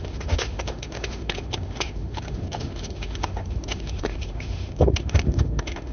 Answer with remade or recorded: remade